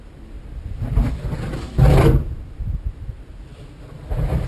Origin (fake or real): real